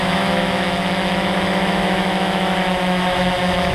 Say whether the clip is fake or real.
fake